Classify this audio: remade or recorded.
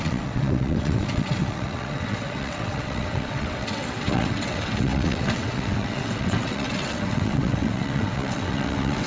remade